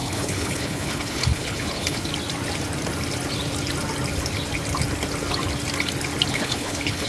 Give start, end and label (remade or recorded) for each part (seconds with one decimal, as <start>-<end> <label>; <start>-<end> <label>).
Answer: 0.0-2.1 remade; 2.1-6.3 recorded; 6.3-7.1 remade